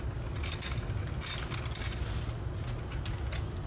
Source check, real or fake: real